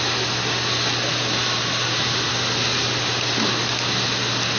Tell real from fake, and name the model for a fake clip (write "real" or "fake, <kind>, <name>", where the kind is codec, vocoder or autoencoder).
real